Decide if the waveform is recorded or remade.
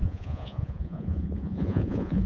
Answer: remade